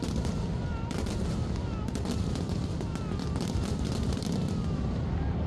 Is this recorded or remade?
recorded